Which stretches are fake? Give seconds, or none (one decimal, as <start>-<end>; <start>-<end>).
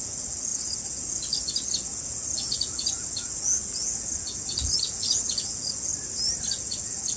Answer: 0.0-5.9; 6.5-7.2